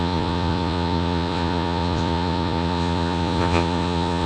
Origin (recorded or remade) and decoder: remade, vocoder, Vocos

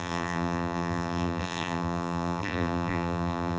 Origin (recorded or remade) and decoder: remade, vocoder, BigVGAN v2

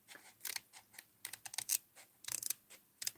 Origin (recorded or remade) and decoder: recorded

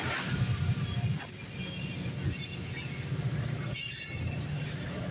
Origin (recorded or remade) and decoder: recorded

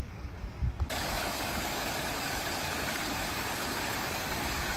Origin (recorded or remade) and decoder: remade, codec, DAC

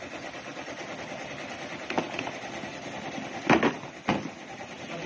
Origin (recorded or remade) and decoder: recorded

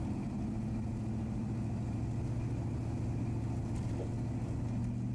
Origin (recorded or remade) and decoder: recorded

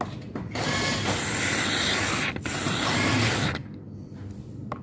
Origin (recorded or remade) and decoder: recorded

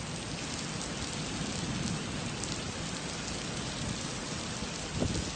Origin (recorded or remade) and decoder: recorded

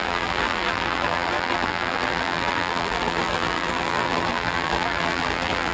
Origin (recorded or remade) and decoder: remade, vocoder, BigVGAN v2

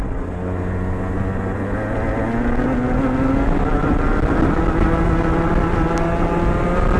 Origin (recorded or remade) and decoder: recorded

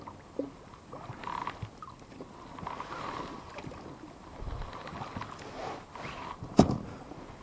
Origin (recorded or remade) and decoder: recorded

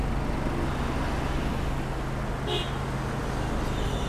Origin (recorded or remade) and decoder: recorded